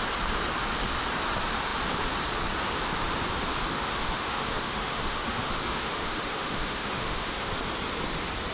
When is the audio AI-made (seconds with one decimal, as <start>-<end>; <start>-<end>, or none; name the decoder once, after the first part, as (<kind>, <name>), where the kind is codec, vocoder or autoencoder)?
3.7-7.5 (autoencoder, DAC-VAE)